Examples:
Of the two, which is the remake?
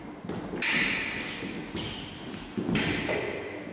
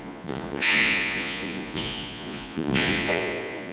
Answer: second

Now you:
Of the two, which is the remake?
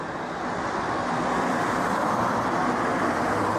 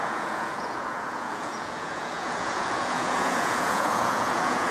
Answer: second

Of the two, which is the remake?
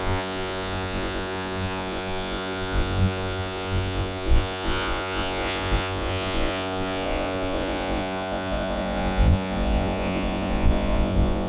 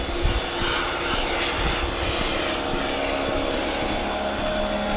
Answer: first